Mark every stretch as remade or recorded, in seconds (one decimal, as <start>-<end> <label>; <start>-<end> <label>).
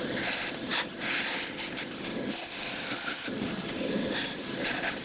0.0-0.7 remade; 0.7-3.3 recorded; 3.3-5.0 remade